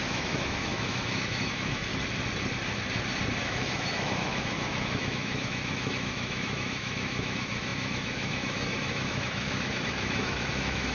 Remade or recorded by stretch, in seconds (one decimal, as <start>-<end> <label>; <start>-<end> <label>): 0.0-1.9 remade; 1.9-3.4 recorded; 3.4-10.9 remade